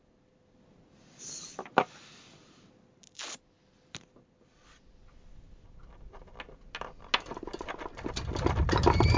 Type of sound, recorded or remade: recorded